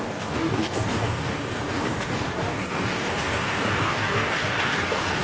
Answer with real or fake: fake